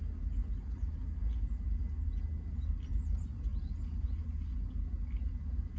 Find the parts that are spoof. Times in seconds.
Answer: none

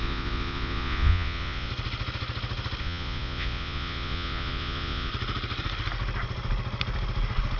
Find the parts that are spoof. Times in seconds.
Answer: 0.0-1.7; 2.8-5.1

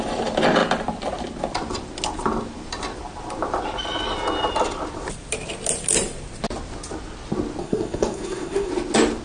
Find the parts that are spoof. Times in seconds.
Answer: 7.6-8.7

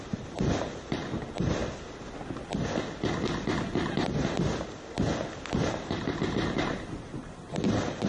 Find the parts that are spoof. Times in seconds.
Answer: 0.0-1.6; 5.6-8.1